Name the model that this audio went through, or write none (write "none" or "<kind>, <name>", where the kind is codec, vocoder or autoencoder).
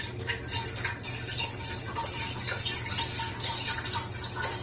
none